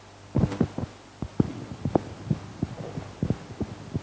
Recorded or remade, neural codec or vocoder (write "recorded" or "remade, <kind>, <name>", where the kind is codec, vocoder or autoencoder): recorded